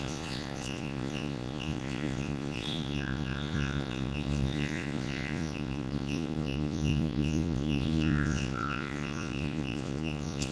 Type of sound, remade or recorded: remade